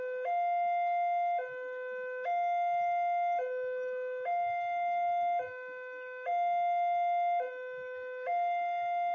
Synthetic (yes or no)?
no